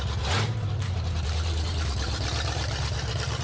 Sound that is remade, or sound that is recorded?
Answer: remade